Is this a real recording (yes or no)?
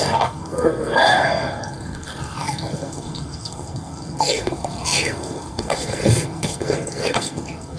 no